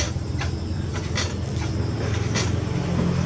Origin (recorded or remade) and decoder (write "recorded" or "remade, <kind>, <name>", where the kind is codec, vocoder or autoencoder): recorded